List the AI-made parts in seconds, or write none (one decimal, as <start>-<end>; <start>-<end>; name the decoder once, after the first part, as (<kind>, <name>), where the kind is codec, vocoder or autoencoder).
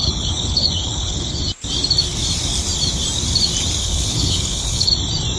0.0-1.4 (codec, HILCodec); 3.8-4.9